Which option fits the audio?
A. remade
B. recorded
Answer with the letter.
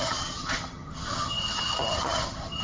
A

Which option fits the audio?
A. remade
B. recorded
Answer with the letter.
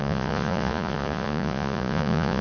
A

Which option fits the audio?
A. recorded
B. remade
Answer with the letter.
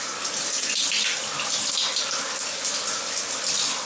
A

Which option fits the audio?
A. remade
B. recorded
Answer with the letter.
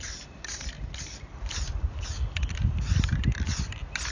B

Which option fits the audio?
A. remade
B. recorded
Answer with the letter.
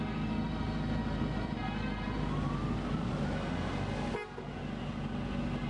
B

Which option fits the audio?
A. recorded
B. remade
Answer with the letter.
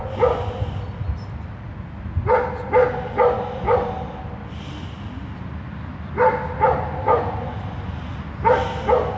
A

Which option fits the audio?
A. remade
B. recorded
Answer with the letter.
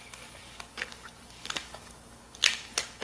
A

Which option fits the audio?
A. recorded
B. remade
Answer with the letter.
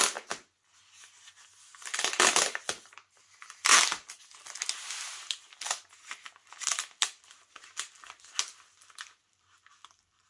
A